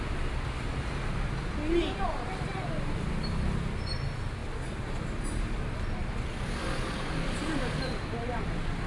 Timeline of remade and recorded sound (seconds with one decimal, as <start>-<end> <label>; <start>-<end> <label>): 0.0-8.9 recorded